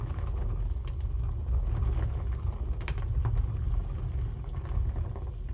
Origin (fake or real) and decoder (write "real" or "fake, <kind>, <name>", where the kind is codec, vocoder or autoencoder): real